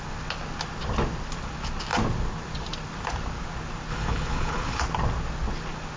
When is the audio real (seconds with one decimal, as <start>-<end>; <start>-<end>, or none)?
0.0-3.9; 4.8-6.0